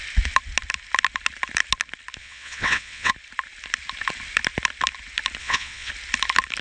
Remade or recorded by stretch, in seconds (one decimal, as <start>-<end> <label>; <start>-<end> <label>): 0.0-2.2 recorded; 2.2-3.1 remade; 3.1-5.4 recorded; 5.4-5.9 remade; 5.9-6.6 recorded